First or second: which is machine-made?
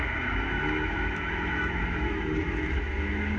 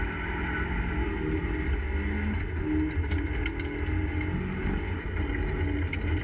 first